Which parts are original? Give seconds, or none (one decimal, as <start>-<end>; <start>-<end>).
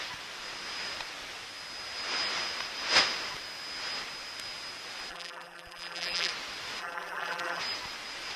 0.0-5.1; 6.3-6.8; 7.6-8.4